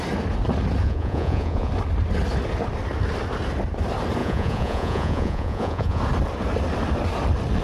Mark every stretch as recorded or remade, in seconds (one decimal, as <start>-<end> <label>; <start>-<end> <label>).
0.0-0.8 recorded; 0.8-1.7 remade; 1.7-4.2 recorded; 4.2-6.0 remade; 6.0-7.6 recorded